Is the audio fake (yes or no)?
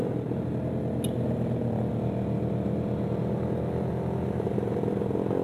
no